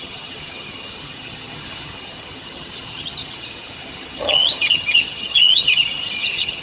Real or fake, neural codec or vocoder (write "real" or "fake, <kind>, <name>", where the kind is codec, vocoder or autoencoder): fake, vocoder, HiFi-GAN